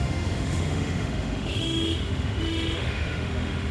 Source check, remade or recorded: remade